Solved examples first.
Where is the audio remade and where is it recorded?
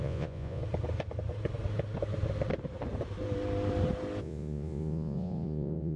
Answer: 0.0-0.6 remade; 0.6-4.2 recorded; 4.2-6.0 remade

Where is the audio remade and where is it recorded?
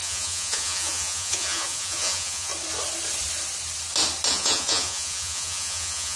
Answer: 0.0-2.5 remade; 2.5-4.3 recorded; 4.3-6.2 remade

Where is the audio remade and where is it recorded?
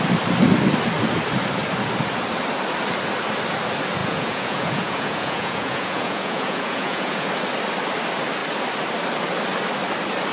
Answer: 0.0-4.0 recorded; 4.0-7.3 remade; 7.3-10.3 recorded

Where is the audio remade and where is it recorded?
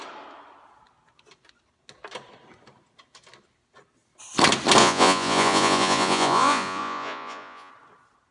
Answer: 0.0-4.8 recorded; 4.8-7.7 remade; 7.7-8.3 recorded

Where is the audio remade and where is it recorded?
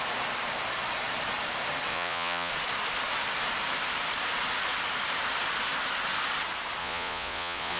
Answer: 0.0-1.9 recorded; 1.9-2.5 remade; 2.5-6.8 recorded; 6.8-7.8 remade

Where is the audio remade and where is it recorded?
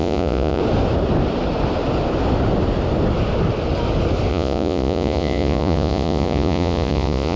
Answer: 0.0-0.6 remade; 0.6-4.3 recorded; 4.3-7.4 remade